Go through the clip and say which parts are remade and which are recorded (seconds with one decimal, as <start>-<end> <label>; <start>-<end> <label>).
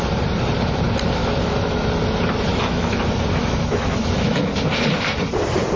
0.0-1.2 recorded; 1.2-1.9 remade; 1.9-2.5 recorded; 2.5-3.0 remade; 3.0-3.4 recorded; 3.4-4.4 remade; 4.4-5.8 recorded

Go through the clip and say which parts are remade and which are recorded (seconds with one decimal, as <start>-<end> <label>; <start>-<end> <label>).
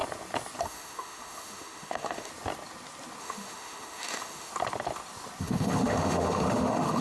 0.0-0.6 recorded; 0.6-2.3 remade; 2.3-3.2 recorded; 3.2-4.5 remade; 4.5-5.4 recorded; 5.4-7.0 remade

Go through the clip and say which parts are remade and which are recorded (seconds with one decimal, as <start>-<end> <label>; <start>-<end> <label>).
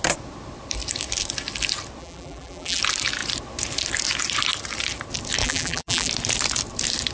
0.0-2.0 recorded; 2.0-2.8 remade; 2.8-5.4 recorded; 5.4-6.1 remade; 6.1-7.1 recorded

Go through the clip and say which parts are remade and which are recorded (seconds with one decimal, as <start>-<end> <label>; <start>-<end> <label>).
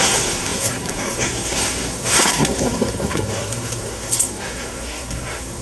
0.0-5.6 remade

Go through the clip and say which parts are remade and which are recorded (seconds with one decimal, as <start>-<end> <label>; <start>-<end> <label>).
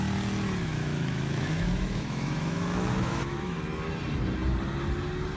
0.0-0.7 recorded; 0.7-3.6 remade; 3.6-5.4 recorded